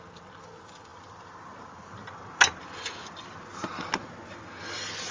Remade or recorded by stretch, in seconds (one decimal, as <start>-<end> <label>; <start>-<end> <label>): 0.0-5.1 recorded